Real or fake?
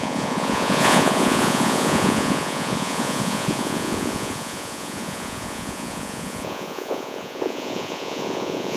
fake